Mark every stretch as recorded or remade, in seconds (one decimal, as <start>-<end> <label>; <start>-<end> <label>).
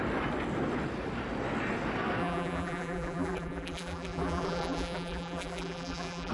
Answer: 0.0-2.2 recorded; 2.2-6.3 remade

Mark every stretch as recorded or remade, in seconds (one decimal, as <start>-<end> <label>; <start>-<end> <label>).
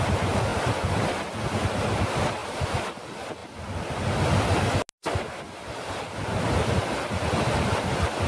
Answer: 0.0-0.5 recorded; 0.5-1.4 remade; 1.4-2.4 recorded; 2.4-2.9 remade; 2.9-8.3 recorded